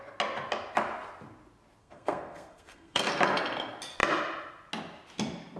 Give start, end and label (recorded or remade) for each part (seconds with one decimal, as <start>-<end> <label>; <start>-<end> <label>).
0.0-1.8 recorded; 1.8-3.1 remade; 3.1-5.6 recorded